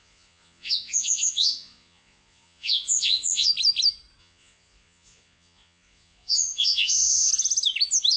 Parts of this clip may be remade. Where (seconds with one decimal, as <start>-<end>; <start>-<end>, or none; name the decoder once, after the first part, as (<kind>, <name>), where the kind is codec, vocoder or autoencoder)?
0.0-3.5 (vocoder, Vocos); 4.2-7.3